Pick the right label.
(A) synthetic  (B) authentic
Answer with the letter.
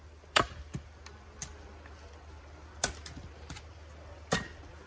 B